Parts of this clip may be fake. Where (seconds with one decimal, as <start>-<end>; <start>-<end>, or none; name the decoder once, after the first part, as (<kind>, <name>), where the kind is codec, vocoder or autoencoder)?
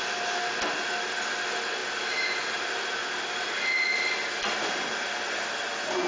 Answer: none